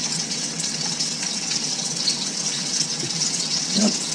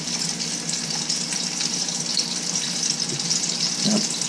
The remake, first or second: first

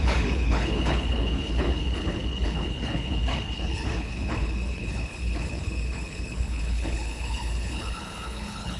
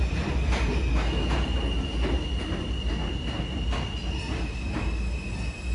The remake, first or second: first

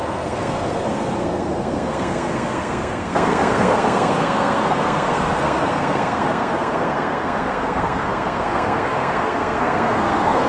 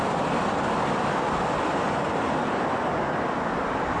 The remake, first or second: first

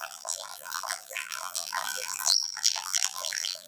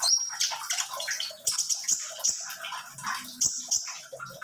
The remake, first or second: first